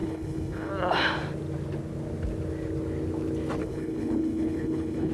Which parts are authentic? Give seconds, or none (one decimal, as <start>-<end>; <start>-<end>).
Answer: 0.7-3.6